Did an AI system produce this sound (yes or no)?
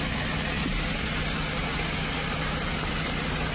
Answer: no